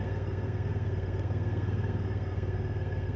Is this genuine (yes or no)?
no